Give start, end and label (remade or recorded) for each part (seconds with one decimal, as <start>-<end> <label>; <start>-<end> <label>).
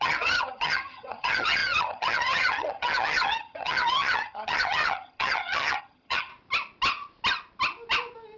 0.0-6.3 remade; 6.3-8.4 recorded